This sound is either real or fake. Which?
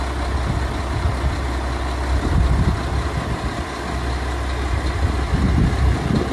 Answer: real